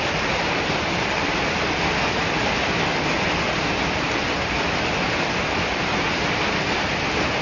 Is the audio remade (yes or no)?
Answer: no